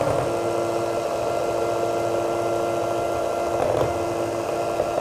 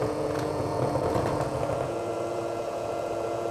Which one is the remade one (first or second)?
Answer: second